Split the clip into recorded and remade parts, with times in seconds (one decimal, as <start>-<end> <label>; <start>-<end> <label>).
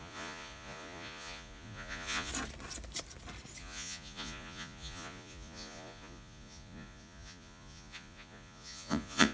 0.0-2.3 remade; 2.3-3.6 recorded; 3.6-9.3 remade